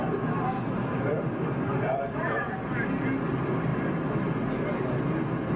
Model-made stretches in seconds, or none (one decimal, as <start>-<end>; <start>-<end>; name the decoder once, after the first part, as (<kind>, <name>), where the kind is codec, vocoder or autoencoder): 1.1-2.8 (vocoder, BigVGAN v2); 3.7-4.5